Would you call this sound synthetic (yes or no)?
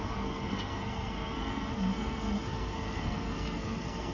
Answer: yes